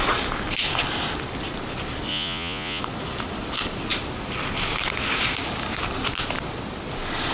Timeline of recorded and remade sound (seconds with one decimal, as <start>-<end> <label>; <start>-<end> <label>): 0.0-2.1 recorded; 2.1-2.8 remade; 2.8-7.3 recorded